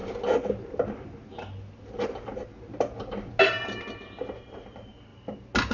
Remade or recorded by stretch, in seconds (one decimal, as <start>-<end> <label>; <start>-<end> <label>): 0.0-3.4 recorded; 3.4-5.1 remade; 5.1-5.7 recorded